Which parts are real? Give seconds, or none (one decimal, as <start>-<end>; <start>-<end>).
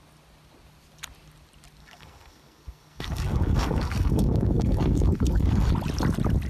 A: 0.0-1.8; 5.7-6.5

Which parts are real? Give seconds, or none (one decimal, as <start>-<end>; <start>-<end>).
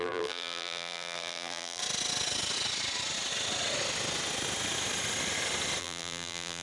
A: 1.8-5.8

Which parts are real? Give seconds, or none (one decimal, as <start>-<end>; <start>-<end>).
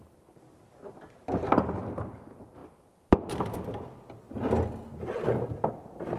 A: 0.0-6.2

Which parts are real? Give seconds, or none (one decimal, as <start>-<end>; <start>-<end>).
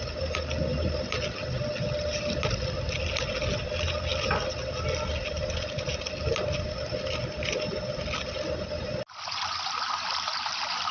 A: 0.0-10.9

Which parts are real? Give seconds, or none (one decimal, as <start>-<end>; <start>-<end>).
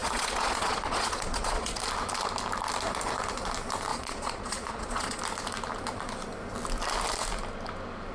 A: 1.8-3.9; 5.2-8.1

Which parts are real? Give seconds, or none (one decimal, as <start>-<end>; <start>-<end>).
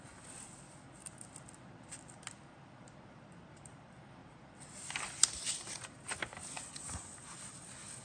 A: 1.0-3.5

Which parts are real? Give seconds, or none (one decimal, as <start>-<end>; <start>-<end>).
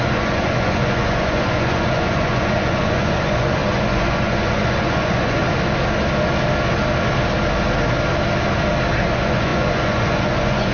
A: 5.4-9.0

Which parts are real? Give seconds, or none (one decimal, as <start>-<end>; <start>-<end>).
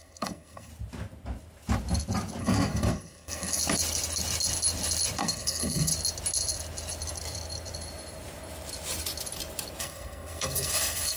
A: 0.7-2.4; 3.6-5.2; 5.9-9.8